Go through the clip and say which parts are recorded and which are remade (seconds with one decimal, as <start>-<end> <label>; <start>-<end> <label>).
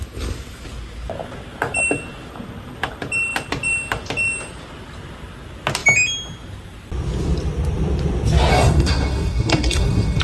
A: 0.0-8.5 recorded; 8.5-10.2 remade